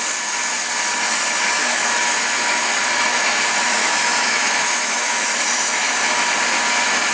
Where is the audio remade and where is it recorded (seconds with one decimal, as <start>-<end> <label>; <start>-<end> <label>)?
0.0-1.6 recorded; 1.6-5.9 remade; 5.9-7.1 recorded

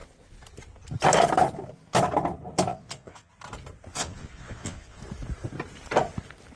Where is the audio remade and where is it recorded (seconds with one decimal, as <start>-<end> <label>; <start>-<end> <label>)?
0.0-2.7 recorded; 2.7-3.3 remade; 3.3-3.9 recorded; 3.9-5.0 remade; 5.0-6.6 recorded